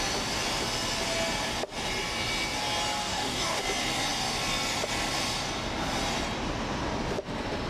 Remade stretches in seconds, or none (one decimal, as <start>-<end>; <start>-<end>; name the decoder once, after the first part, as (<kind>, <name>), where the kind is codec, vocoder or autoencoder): 3.0-3.6 (codec, DAC)